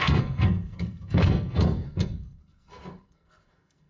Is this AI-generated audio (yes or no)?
yes